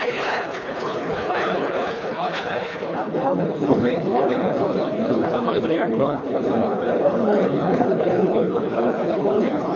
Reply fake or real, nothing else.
fake